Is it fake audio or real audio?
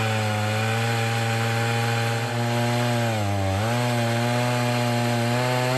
real